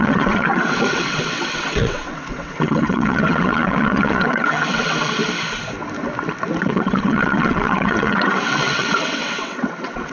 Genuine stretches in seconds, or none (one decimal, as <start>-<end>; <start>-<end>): 5.2-6.6